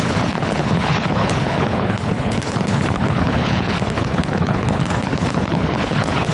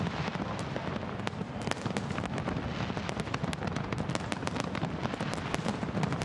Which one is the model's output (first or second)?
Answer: first